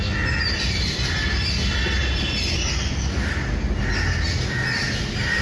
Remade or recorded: recorded